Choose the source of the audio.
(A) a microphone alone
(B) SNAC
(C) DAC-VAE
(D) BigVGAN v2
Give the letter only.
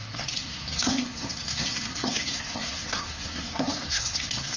B